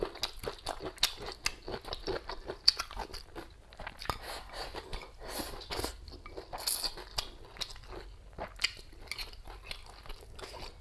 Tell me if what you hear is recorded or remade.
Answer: recorded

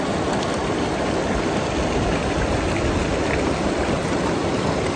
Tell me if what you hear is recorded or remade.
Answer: recorded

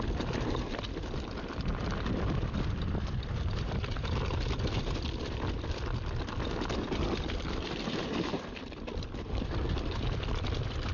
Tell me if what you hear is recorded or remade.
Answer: remade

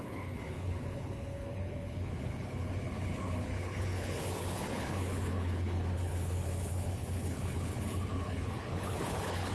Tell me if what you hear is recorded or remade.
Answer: remade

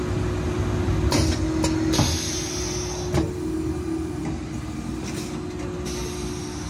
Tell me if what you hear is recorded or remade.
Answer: recorded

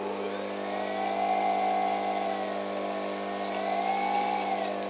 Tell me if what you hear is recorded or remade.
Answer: recorded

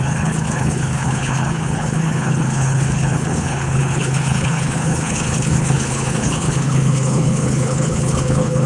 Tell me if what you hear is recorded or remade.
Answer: remade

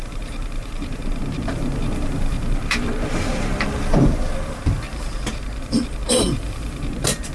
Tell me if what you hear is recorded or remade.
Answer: remade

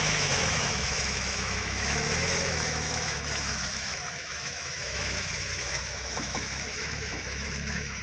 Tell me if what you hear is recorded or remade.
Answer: remade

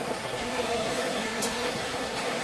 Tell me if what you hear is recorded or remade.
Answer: remade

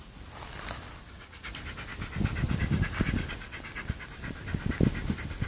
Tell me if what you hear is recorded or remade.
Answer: recorded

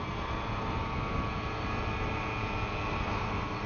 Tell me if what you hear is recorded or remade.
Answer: recorded